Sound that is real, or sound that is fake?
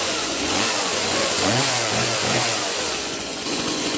fake